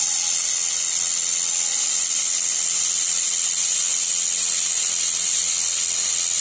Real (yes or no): yes